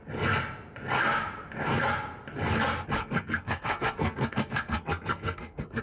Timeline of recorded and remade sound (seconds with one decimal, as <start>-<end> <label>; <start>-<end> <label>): 0.0-3.0 recorded; 3.0-5.8 remade